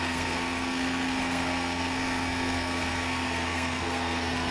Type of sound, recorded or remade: remade